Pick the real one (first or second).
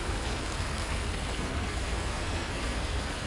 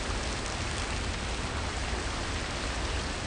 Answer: second